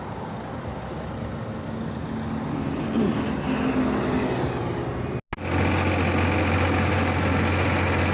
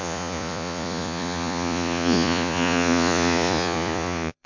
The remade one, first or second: second